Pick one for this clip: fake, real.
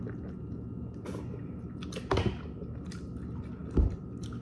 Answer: real